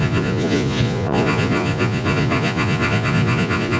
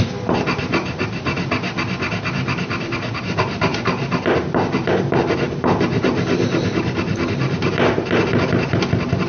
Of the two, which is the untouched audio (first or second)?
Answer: second